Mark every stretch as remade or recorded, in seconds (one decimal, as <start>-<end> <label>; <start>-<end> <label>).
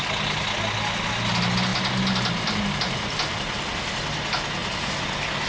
0.0-5.5 recorded